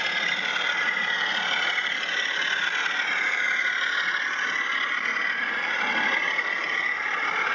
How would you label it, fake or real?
real